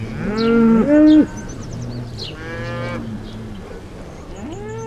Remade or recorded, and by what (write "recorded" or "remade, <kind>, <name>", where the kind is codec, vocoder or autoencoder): recorded